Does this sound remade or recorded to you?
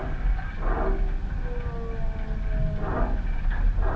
recorded